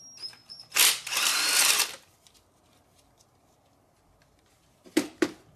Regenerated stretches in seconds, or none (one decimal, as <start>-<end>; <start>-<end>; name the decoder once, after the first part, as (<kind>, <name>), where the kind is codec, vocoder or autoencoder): 0.4-0.9 (vocoder, BigVGAN v2)